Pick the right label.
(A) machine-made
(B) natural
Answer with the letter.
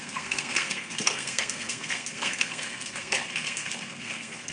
A